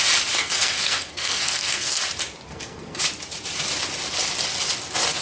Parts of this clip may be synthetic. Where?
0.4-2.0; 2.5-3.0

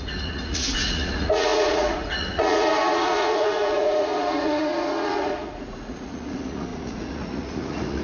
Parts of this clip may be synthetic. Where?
0.0-8.0